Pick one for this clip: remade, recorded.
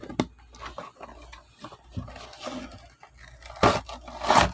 recorded